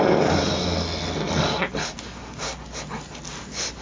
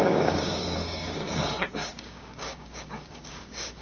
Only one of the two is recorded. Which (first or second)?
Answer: first